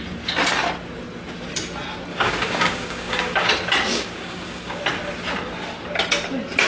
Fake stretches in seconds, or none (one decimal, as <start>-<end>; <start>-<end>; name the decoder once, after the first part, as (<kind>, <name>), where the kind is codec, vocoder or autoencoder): 2.1-3.5 (codec, DAC); 3.9-4.8